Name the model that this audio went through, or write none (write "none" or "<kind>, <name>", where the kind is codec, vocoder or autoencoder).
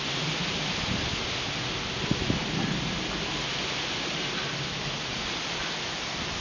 none